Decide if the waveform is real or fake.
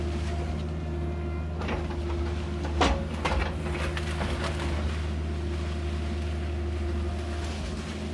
real